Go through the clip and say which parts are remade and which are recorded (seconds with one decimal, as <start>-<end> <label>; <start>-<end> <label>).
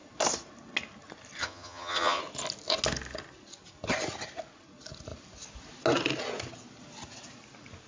0.0-1.4 recorded; 1.4-2.2 remade; 2.2-7.9 recorded